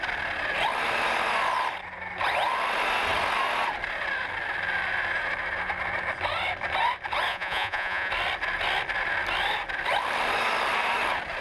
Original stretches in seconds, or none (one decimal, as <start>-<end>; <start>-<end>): 0.0-7.3; 8.1-11.4